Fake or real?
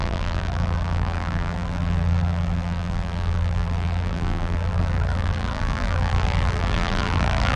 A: fake